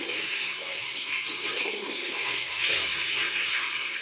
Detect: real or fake fake